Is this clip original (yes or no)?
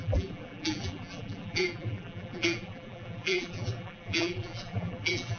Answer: no